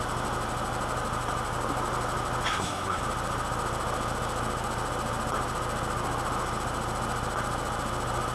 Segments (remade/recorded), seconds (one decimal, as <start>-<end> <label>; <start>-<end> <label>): 0.0-2.5 recorded; 2.5-3.0 remade; 3.0-8.3 recorded